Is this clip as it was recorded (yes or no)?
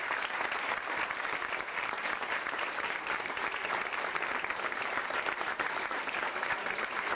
no